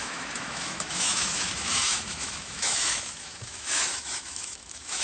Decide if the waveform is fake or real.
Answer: fake